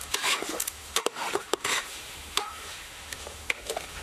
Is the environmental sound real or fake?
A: fake